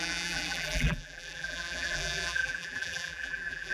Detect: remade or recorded remade